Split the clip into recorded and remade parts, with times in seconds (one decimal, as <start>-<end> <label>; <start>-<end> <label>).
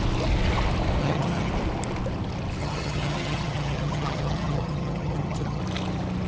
0.0-1.0 recorded; 1.0-1.5 remade; 1.5-2.6 recorded; 2.6-5.6 remade; 5.6-6.3 recorded